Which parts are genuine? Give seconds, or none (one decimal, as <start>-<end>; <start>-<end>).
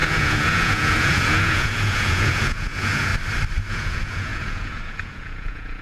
3.1-3.7